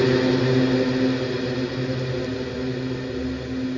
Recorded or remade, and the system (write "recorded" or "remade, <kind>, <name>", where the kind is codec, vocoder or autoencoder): recorded